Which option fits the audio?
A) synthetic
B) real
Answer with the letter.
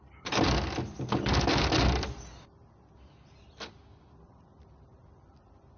B